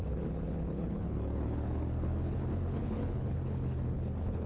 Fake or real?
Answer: fake